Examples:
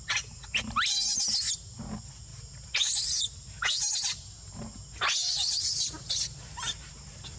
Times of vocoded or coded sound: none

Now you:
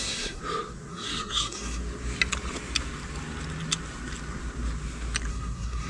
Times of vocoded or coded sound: 0.0-0.4 (codec, SNAC); 0.9-1.8; 5.3-5.9